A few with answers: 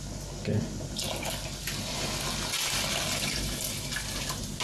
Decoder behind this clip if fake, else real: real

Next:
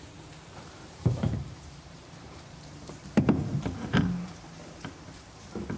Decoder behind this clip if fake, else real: fake, vocoder, BigVGAN v2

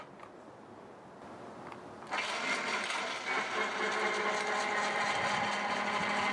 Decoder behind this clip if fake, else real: real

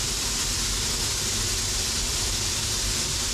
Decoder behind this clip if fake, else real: fake, vocoder, BigVGAN v2